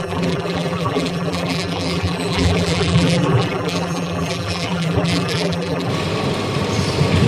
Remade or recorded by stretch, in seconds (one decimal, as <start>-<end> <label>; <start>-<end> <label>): 0.0-5.9 remade; 5.9-7.3 recorded